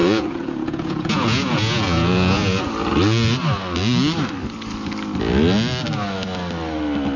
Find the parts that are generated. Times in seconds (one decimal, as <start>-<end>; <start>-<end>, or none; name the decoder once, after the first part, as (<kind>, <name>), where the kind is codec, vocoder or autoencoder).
0.0-2.7 (vocoder, Vocos)